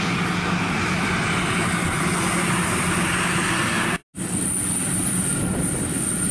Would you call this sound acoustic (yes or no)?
yes